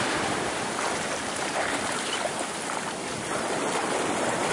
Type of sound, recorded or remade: remade